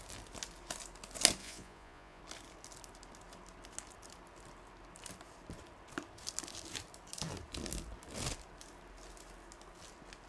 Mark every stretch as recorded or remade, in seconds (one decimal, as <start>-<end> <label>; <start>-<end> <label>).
0.0-1.4 recorded; 1.4-2.2 remade; 2.2-10.3 recorded